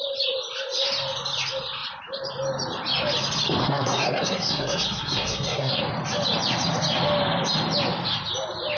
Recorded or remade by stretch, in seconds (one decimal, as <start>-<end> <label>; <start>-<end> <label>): 0.0-3.6 recorded; 3.6-5.8 remade; 5.8-8.8 recorded